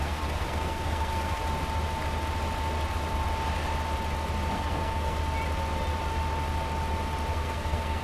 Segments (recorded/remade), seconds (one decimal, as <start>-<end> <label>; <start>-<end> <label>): 0.0-1.4 remade; 1.4-4.5 recorded; 4.5-5.2 remade; 5.2-7.3 recorded; 7.3-8.0 remade